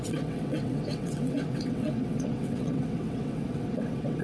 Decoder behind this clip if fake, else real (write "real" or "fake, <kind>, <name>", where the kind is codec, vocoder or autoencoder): fake, vocoder, WaveNeXt